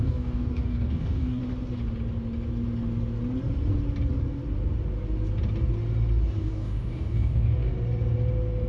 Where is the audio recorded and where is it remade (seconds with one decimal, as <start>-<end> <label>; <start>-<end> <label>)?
0.0-1.4 remade; 1.4-6.4 recorded; 6.4-7.7 remade; 7.7-8.7 recorded